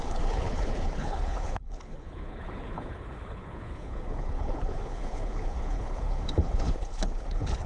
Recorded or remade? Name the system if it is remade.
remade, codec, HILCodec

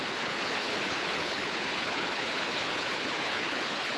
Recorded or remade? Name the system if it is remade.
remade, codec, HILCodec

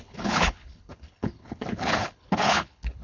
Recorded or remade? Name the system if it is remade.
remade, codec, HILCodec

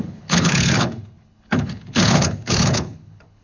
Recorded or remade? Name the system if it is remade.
remade, codec, HILCodec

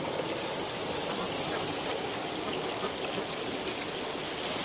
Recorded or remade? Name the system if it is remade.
recorded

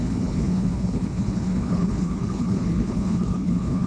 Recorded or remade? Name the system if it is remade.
remade, codec, HILCodec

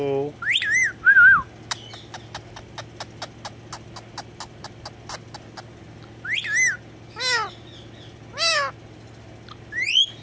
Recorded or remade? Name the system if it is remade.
recorded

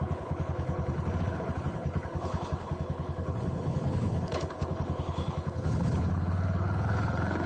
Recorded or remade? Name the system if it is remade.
remade, codec, HILCodec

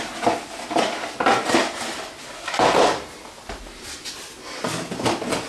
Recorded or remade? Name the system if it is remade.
recorded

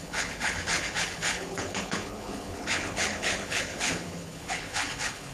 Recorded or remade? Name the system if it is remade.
remade, codec, HILCodec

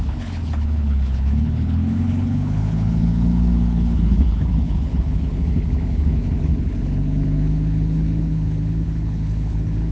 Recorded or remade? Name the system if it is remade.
remade, codec, HILCodec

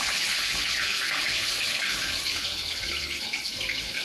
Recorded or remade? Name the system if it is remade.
remade, codec, HILCodec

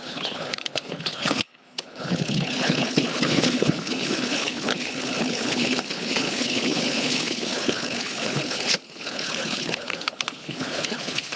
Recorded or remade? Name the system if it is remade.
remade, codec, HILCodec